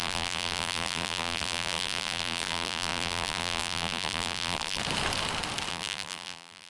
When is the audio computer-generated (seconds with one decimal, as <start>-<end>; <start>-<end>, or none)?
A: 0.0-4.8; 5.7-6.7